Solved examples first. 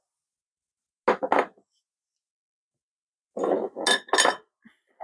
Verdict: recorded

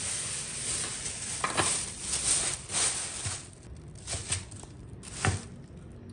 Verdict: recorded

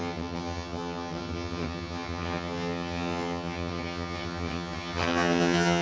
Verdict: remade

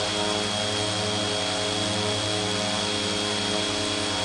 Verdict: recorded